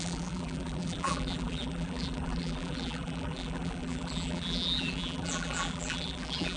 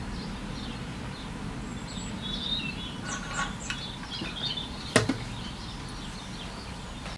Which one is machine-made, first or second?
first